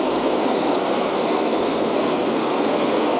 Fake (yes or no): yes